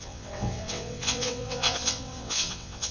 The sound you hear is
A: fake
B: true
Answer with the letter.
A